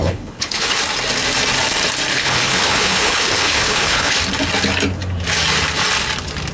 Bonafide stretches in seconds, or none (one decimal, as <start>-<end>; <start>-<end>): 0.8-2.1; 4.2-6.5